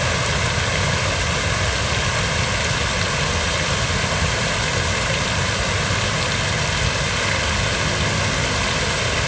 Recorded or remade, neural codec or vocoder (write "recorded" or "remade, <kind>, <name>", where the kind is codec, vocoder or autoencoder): recorded